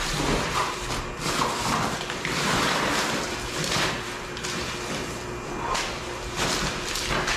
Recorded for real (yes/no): yes